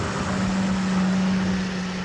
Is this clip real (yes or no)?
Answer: yes